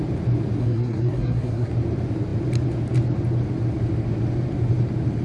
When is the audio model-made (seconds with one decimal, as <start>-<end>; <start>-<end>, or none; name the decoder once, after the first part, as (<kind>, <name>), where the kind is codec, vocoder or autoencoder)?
0.6-1.7 (codec, SNAC)